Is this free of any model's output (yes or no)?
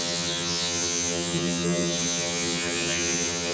no